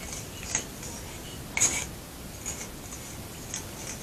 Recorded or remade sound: recorded